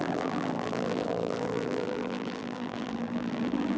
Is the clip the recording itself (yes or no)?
no